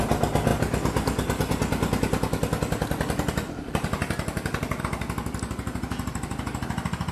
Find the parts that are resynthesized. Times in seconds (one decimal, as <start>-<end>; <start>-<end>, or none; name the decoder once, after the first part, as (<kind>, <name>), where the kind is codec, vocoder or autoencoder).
none